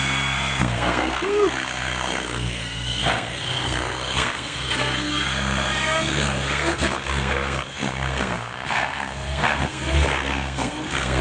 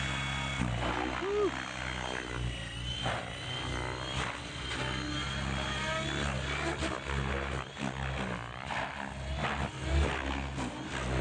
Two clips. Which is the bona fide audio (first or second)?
second